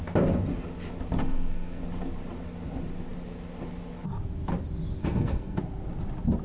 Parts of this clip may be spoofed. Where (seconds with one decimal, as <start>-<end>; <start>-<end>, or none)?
1.2-1.8; 5.0-5.6